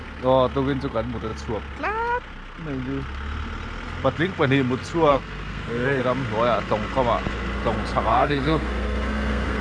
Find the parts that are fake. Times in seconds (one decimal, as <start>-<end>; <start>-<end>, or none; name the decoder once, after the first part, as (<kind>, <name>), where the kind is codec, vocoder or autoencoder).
5.1-6.0 (codec, SNAC); 8.1-9.6